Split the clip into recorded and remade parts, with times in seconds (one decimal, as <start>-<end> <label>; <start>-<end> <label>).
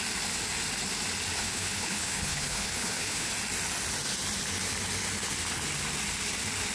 0.0-1.4 recorded; 1.4-3.3 remade; 3.3-6.7 recorded